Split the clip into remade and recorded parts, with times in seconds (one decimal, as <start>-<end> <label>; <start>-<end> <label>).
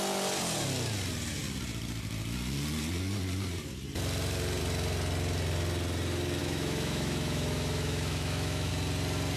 0.0-6.4 recorded; 6.4-8.7 remade; 8.7-9.4 recorded